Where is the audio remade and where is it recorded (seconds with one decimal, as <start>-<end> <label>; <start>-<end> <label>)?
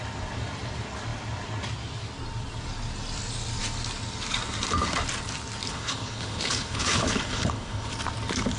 0.0-5.7 recorded; 5.7-7.9 remade; 7.9-8.6 recorded